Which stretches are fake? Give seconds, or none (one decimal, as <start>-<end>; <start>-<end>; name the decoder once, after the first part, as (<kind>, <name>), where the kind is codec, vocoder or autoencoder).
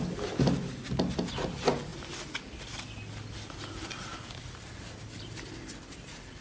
none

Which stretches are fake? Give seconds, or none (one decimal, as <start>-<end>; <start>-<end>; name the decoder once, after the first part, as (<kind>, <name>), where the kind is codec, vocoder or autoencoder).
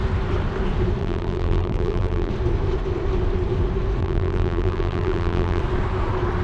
1.0-2.3 (vocoder, BigVGAN v2); 4.0-5.6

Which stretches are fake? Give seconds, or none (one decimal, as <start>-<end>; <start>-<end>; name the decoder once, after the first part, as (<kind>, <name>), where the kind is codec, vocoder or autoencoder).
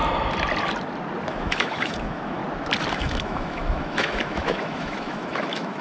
1.3-2.4 (autoencoder, DAC-VAE); 2.9-5.8